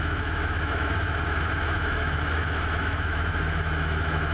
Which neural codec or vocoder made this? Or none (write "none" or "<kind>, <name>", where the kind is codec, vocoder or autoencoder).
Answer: autoencoder, DAC-VAE